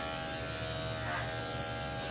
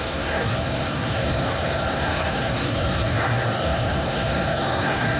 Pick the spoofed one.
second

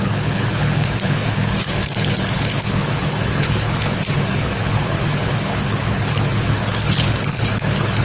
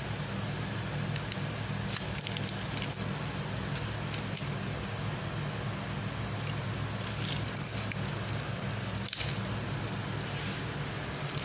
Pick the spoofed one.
first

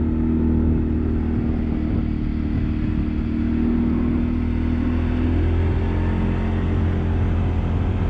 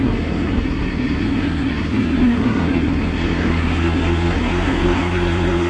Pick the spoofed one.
second